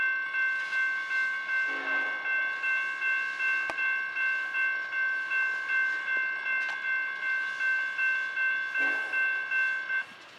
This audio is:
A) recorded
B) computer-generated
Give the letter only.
A